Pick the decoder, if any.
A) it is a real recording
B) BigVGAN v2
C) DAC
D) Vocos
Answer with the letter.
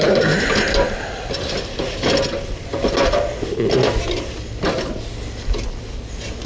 A